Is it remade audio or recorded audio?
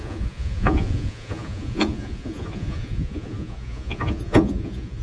remade